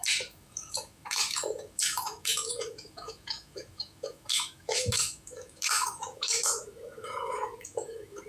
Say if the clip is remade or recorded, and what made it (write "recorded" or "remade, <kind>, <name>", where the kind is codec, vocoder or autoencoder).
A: remade, autoencoder, DAC-VAE